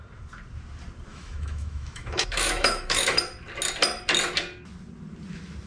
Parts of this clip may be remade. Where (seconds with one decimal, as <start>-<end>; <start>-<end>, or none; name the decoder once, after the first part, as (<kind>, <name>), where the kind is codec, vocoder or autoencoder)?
1.1-3.2 (autoencoder, DAC-VAE)